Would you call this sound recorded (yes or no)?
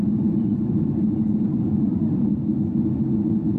no